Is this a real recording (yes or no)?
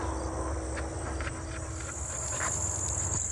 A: yes